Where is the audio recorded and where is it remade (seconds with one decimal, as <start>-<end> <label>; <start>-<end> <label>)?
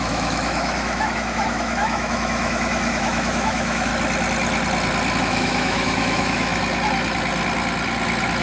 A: 0.0-3.9 remade; 3.9-5.2 recorded; 5.2-6.5 remade; 6.5-8.4 recorded